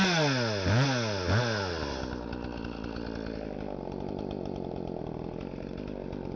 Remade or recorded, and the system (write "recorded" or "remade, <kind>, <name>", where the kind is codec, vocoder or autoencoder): recorded